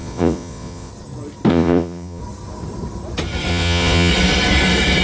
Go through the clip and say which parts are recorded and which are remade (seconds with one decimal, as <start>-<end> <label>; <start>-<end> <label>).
0.0-0.9 remade; 0.9-1.5 recorded; 1.5-2.2 remade; 2.2-3.5 recorded; 3.5-4.1 remade; 4.1-5.0 recorded